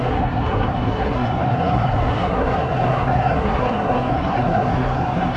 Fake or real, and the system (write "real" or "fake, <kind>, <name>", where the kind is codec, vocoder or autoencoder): fake, codec, SNAC